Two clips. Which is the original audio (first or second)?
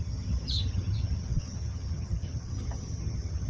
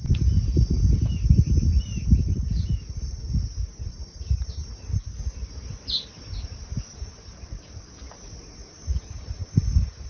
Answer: second